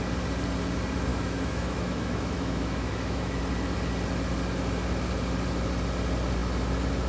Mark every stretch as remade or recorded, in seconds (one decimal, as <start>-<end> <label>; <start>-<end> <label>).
0.0-1.1 recorded; 1.1-3.4 remade; 3.4-7.1 recorded